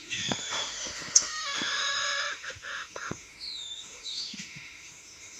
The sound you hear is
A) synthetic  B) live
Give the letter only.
A